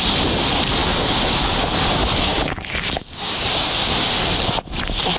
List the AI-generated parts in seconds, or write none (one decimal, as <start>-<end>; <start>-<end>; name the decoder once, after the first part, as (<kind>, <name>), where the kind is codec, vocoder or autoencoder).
0.8-3.9 (codec, DAC)